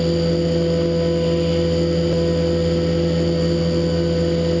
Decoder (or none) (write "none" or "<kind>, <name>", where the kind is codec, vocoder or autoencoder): none